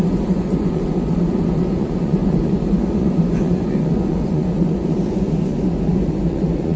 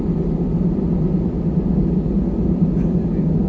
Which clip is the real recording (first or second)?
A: second